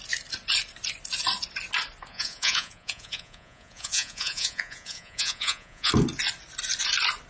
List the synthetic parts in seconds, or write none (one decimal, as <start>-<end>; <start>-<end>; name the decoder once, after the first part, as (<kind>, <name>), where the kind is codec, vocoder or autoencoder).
2.1-5.9 (vocoder, Vocos)